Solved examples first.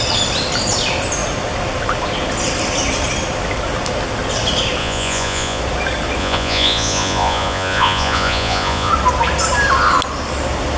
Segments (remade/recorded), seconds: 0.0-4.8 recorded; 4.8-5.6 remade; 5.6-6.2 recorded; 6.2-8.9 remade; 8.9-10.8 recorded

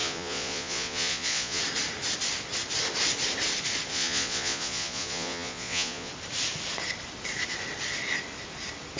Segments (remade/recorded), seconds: 0.0-1.6 remade; 1.6-3.9 recorded; 3.9-6.1 remade; 6.1-9.0 recorded

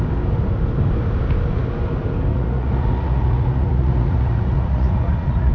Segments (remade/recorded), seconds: 0.0-2.3 recorded; 2.3-5.5 remade